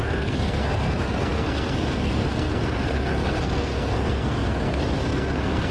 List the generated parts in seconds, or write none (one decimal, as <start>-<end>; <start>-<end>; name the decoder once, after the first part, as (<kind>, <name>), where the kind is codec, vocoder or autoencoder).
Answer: 0.0-5.7 (codec, SNAC)